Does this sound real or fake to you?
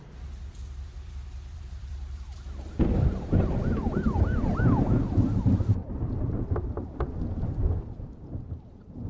fake